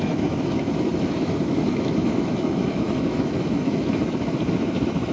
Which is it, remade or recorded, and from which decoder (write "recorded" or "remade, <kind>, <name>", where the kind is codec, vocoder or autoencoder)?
remade, autoencoder, DAC-VAE